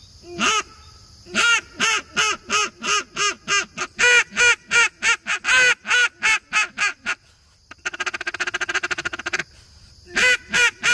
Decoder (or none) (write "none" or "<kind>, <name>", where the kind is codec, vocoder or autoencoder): none